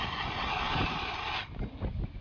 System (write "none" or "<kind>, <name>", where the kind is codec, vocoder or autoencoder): none